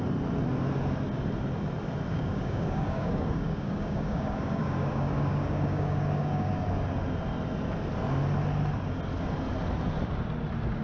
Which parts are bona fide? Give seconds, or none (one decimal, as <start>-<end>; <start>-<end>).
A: 0.0-2.1; 6.5-10.8

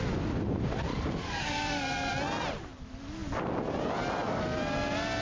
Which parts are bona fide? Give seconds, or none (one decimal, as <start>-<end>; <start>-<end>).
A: 0.0-0.9; 1.8-5.2

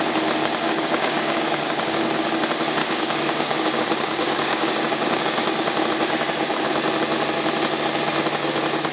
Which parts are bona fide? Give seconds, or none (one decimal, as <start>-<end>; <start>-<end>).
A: 0.0-0.4; 2.3-2.8; 5.6-8.9

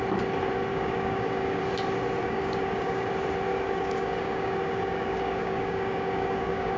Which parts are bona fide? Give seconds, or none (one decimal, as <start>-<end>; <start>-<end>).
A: 0.0-0.7; 1.6-2.2; 3.1-3.5

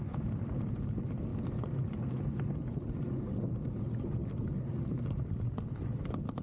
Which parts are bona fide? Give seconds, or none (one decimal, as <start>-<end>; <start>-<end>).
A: 0.0-6.4

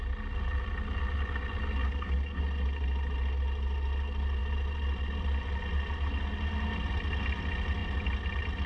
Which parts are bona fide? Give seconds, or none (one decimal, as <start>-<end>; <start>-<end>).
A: 0.0-1.8; 2.4-8.7

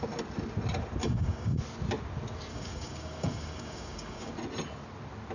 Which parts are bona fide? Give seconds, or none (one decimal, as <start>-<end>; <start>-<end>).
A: 0.0-1.0; 1.6-2.5; 4.3-5.3

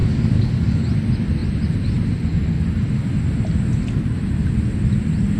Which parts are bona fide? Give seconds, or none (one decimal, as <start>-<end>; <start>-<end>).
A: 0.8-5.4